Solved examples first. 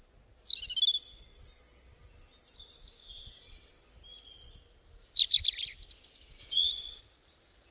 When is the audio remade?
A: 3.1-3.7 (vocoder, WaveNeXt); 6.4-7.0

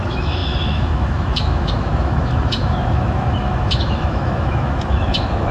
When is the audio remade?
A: 0.0-5.5 (autoencoder, DAC-VAE)

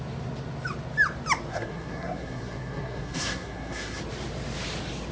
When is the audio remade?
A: 1.5-4.0 (codec, SNAC)

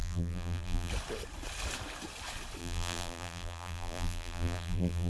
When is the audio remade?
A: 0.0-0.9 (vocoder, BigVGAN v2); 2.6-5.1

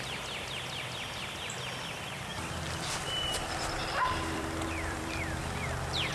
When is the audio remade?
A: 2.3-6.1 (vocoder, BigVGAN v2)

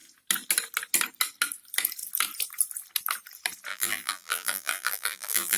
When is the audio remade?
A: 3.7-5.6 (vocoder, BigVGAN v2)

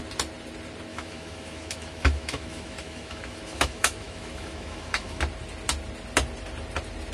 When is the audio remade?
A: 0.9-5.2 (autoencoder, DAC-VAE)